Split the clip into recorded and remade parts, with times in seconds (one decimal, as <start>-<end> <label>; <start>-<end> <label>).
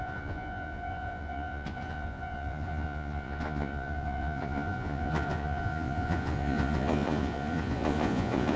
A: 0.0-8.6 remade